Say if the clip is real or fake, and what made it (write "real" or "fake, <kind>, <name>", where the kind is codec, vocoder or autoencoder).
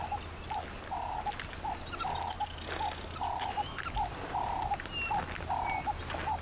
real